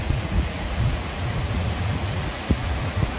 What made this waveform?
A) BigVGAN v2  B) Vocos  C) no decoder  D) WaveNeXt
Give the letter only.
B